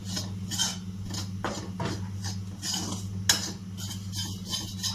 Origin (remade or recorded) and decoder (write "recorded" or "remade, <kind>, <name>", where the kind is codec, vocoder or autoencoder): recorded